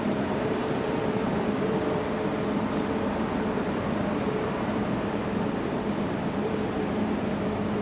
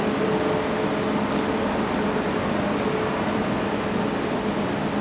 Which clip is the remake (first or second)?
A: first